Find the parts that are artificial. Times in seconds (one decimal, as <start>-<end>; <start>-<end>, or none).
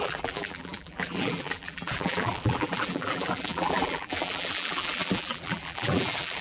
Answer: 0.0-6.4